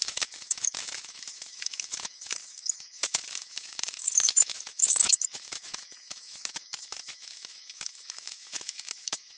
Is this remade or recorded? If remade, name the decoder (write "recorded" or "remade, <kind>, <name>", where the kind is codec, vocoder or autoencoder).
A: remade, autoencoder, DAC-VAE